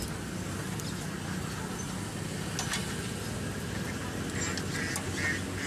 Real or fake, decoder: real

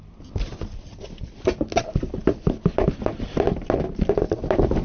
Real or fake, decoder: real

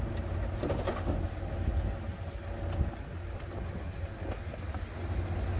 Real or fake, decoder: real